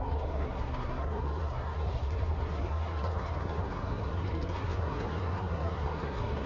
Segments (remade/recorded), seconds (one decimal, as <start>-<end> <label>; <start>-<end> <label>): 0.0-6.5 remade